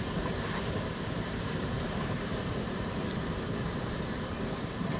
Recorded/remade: remade